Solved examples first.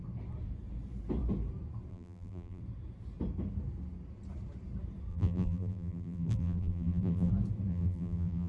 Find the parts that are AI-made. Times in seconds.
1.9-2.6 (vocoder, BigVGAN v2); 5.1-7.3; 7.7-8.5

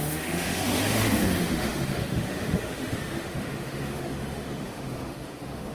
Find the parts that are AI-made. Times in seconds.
0.0-5.7 (autoencoder, DAC-VAE)

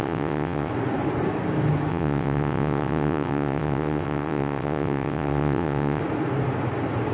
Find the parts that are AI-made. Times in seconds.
0.0-0.7 (vocoder, WaveNeXt); 1.9-6.0